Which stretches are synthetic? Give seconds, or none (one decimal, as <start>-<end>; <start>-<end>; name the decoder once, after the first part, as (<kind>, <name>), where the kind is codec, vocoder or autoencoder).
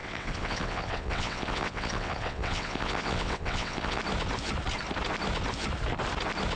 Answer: 0.0-4.0 (vocoder, WaveNeXt)